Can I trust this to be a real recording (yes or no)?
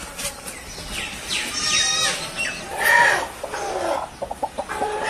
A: yes